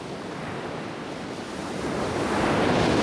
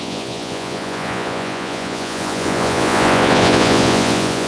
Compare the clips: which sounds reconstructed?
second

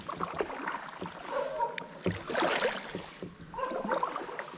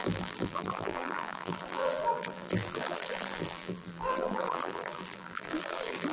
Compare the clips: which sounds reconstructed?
second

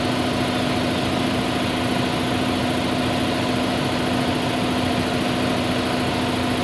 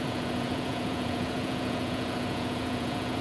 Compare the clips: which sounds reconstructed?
second